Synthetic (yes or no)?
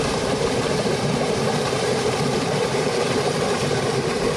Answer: yes